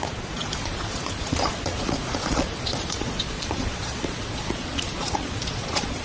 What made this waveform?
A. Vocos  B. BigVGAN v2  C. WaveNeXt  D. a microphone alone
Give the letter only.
A